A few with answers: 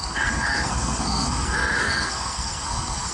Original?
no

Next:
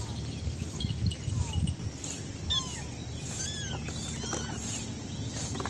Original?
yes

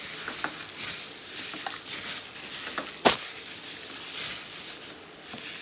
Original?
yes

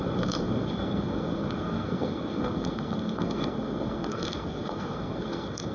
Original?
no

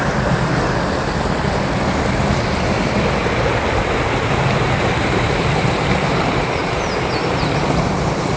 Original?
yes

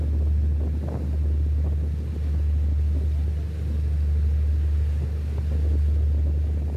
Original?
yes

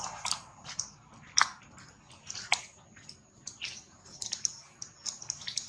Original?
yes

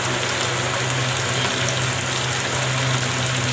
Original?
yes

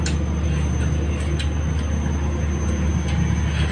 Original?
yes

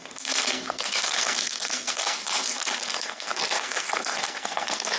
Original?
no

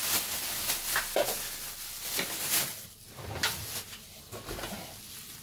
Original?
yes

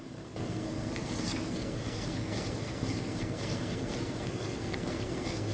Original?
no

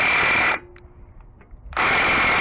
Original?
yes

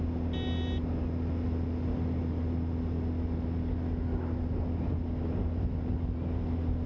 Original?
yes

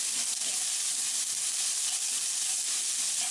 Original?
yes